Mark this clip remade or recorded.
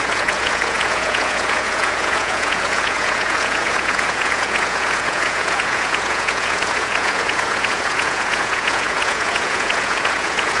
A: remade